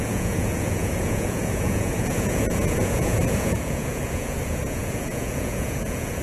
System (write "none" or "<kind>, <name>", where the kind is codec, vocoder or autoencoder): vocoder, Vocos